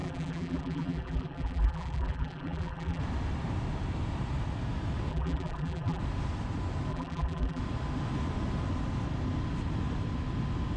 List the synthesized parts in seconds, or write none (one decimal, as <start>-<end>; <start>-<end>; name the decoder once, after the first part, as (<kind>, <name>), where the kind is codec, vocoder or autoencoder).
0.0-3.0 (vocoder, BigVGAN v2); 5.1-6.0; 6.9-7.6